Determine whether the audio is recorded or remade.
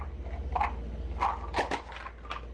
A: recorded